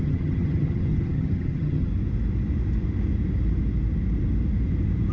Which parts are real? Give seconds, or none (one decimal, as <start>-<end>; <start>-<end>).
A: 1.9-5.1